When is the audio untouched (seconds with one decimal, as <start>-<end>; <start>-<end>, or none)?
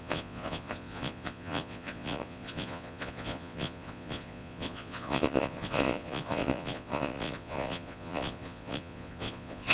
none